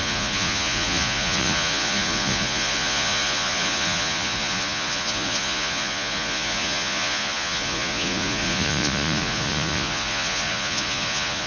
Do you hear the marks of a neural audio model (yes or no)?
yes